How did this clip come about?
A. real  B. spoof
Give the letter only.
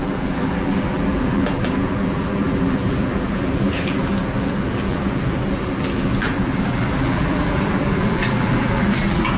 B